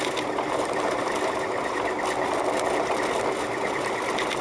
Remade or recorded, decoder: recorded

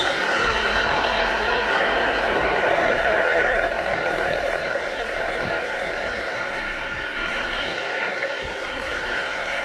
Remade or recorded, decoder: remade, codec, SNAC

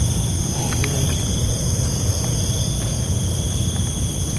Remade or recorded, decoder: recorded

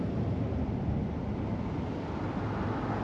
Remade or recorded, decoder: recorded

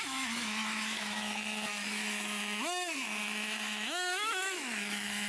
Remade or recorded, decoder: remade, autoencoder, DAC-VAE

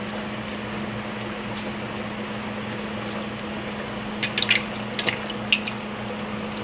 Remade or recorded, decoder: recorded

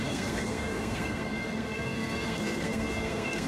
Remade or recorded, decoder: remade, codec, SNAC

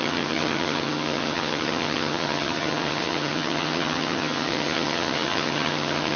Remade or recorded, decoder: remade, vocoder, HiFi-GAN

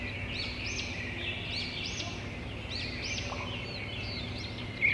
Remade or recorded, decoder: recorded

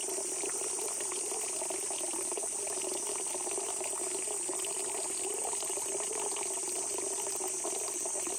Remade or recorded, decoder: recorded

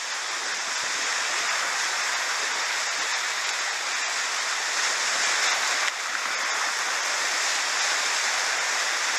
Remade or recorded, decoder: recorded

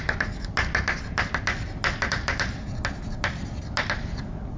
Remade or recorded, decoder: recorded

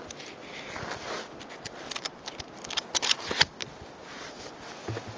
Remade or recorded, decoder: recorded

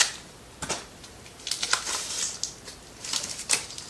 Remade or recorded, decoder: recorded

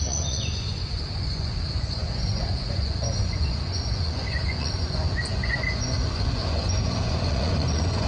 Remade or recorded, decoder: remade, vocoder, Vocos